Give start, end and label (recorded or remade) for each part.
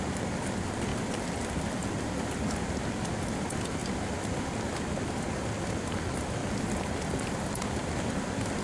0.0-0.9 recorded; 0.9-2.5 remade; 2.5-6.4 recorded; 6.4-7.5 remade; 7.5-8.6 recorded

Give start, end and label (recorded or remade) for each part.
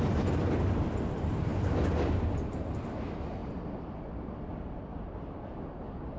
0.0-6.2 recorded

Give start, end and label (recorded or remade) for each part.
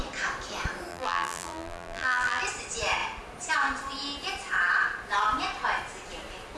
0.0-0.9 recorded; 0.9-2.4 remade; 2.4-6.6 recorded